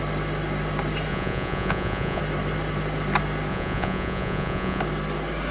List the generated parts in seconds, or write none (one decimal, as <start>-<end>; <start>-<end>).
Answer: 1.1-2.2; 3.5-4.8